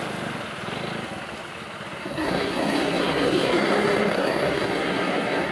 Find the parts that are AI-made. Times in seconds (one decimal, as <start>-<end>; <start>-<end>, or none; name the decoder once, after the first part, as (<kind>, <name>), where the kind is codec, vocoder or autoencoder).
2.0-5.5 (codec, SNAC)